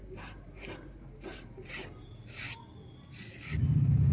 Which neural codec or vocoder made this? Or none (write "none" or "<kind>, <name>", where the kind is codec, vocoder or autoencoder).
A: none